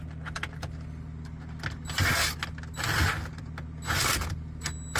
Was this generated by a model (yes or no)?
no